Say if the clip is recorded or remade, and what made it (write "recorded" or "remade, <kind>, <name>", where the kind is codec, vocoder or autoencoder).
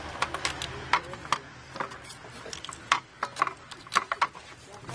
recorded